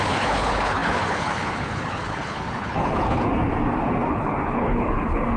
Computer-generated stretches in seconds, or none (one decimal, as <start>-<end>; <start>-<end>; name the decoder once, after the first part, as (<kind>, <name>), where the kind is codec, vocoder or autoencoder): 0.0-3.3 (codec, HILCodec); 4.1-5.4